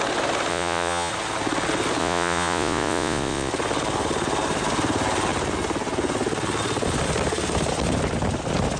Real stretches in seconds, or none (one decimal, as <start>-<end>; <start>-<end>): 0.0-0.5; 1.1-2.0; 3.5-8.8